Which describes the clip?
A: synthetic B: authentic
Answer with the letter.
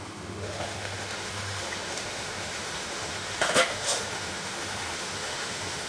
A